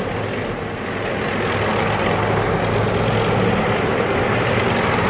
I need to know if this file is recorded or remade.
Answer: recorded